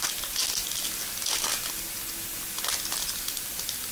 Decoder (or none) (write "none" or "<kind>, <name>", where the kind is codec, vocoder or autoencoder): none